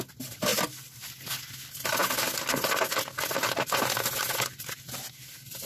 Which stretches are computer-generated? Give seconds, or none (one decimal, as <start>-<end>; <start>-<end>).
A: none